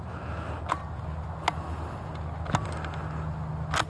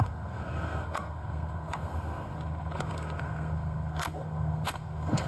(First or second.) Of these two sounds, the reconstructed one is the second